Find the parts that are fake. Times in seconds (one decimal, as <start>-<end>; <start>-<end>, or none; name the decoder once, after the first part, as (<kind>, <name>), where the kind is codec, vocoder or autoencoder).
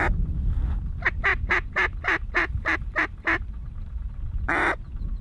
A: 1.3-4.4 (vocoder, BigVGAN v2)